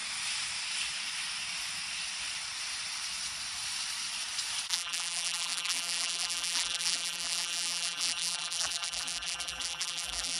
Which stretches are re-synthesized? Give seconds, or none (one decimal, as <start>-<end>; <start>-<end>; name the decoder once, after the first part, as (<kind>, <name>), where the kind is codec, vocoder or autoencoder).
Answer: 4.7-10.4 (vocoder, BigVGAN v2)